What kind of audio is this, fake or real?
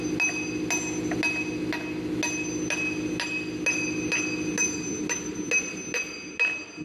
real